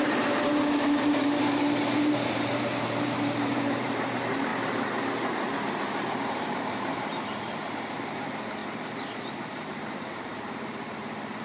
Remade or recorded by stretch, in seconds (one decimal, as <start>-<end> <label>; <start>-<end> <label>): 0.0-4.5 remade; 4.5-5.7 recorded; 5.7-8.6 remade; 8.6-9.3 recorded; 9.3-11.4 remade